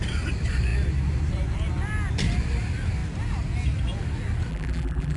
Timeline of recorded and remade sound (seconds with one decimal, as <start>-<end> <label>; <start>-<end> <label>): 0.0-4.5 recorded; 4.5-5.2 remade

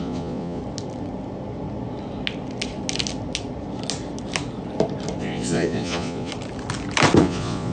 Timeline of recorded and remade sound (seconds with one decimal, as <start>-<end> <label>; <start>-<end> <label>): 0.0-0.6 remade; 0.6-5.2 recorded; 5.2-6.3 remade; 6.3-7.2 recorded; 7.2-7.7 remade

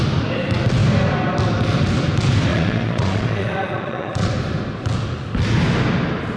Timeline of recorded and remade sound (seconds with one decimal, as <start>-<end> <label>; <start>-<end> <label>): 0.0-2.5 recorded; 2.5-4.3 remade; 4.3-6.4 recorded

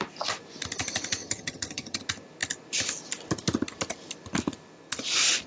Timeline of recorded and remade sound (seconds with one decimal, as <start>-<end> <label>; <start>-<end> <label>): 0.0-1.2 recorded; 1.2-2.0 remade; 2.0-5.5 recorded

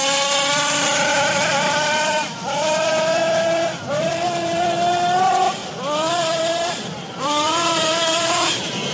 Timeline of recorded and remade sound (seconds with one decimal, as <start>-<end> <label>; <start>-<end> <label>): 0.0-3.2 remade; 3.2-3.8 recorded; 3.8-5.6 remade; 5.6-6.5 recorded; 6.5-8.9 remade

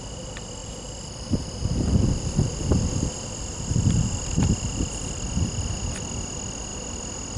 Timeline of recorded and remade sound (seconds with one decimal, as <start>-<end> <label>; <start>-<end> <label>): 0.0-0.6 recorded; 0.6-5.0 remade; 5.0-7.4 recorded

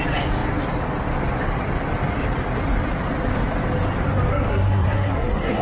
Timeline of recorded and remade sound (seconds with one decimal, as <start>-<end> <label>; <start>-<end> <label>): 0.0-4.5 recorded; 4.5-5.6 remade

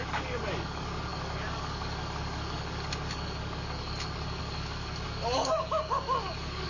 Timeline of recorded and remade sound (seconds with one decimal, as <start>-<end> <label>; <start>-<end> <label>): 0.0-6.7 remade